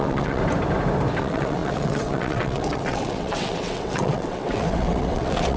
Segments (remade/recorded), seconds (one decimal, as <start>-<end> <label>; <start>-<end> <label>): 0.0-0.4 remade; 0.4-1.2 recorded; 1.2-5.6 remade